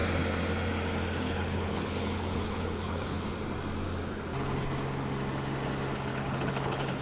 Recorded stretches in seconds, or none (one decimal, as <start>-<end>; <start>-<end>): 0.0-1.2; 3.3-6.1